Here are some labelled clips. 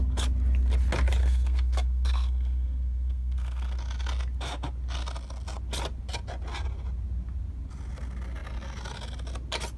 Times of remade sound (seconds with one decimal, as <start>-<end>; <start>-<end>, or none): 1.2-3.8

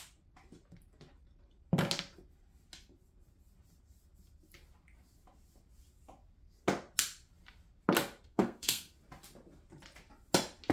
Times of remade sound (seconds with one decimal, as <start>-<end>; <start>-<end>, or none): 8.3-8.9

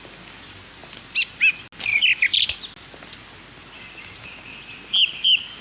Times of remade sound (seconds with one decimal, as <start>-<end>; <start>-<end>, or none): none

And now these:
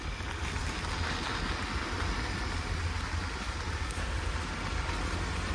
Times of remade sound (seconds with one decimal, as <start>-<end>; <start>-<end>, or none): none

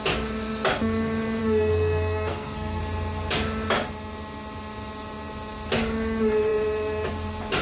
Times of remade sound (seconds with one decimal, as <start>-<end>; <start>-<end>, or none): 1.4-2.8

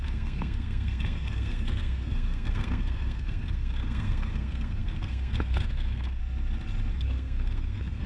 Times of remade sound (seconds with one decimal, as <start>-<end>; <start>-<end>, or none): 0.0-6.2; 6.9-8.1

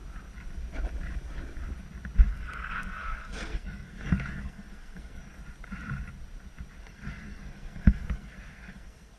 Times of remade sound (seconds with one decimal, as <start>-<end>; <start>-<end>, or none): 2.3-5.4; 6.8-9.2